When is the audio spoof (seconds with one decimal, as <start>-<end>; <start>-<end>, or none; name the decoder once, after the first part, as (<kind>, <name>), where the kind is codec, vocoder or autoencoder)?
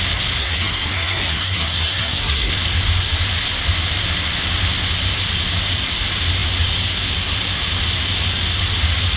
0.4-2.5 (codec, SNAC)